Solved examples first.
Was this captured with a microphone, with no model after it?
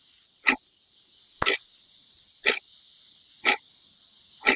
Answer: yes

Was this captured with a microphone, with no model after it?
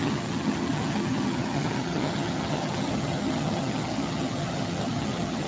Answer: no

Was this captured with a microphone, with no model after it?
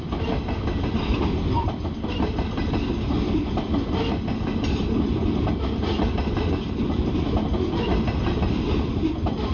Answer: yes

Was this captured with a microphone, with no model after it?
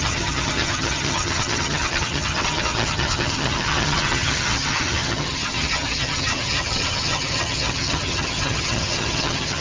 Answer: no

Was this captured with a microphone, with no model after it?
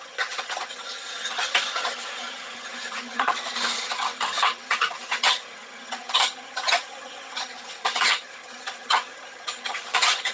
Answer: no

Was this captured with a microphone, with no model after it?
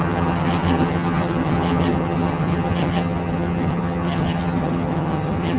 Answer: no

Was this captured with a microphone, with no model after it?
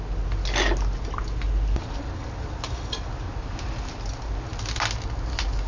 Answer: yes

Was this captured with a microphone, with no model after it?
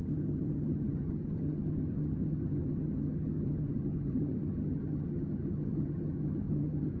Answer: no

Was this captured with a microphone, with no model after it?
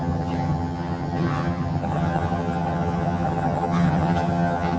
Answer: no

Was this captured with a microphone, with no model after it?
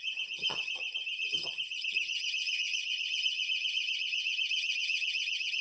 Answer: no